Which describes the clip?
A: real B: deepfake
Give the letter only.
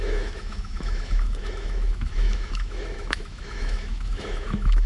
B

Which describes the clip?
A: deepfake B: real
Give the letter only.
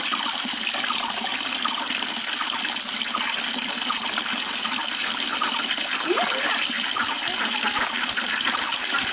B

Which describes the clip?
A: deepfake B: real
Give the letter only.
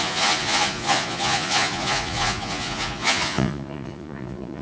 A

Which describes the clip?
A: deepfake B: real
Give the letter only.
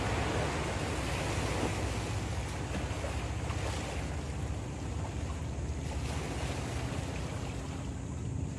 B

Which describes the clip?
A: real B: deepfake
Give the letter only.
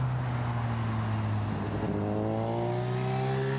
A